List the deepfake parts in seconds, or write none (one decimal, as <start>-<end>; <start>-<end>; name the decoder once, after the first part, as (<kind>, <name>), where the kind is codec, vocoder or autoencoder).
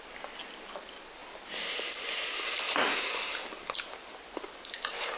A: none